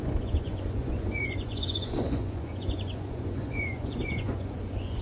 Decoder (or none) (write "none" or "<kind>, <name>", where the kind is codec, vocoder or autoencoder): vocoder, Vocos